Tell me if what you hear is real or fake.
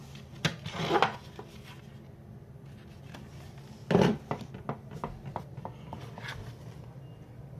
real